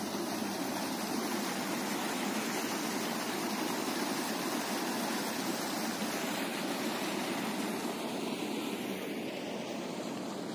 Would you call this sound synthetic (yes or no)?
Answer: no